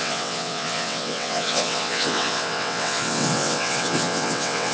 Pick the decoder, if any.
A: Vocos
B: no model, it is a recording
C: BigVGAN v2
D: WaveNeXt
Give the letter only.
D